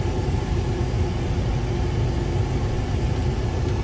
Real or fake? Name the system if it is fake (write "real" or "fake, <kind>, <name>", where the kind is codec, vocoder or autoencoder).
real